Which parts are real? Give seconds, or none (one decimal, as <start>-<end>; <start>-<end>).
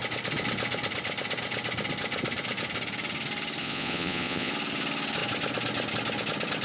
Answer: 0.0-3.6; 4.5-6.6